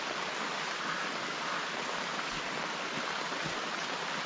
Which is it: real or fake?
real